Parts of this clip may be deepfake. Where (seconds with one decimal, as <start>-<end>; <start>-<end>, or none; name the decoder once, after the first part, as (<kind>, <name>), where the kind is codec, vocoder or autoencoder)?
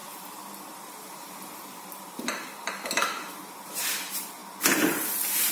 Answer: 0.0-5.5 (vocoder, BigVGAN v2)